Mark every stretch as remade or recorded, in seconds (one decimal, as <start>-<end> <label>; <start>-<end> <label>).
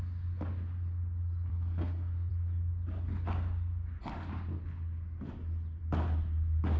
0.0-1.5 recorded; 1.5-2.3 remade; 2.3-6.8 recorded